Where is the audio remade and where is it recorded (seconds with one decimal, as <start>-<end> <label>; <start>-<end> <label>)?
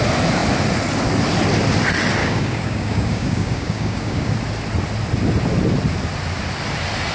0.0-2.2 recorded; 2.2-4.3 remade; 4.3-7.1 recorded